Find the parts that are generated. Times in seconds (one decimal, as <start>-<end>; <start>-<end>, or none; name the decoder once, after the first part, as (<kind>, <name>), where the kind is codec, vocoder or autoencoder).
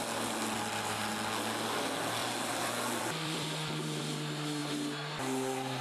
2.2-4.0 (vocoder, BigVGAN v2)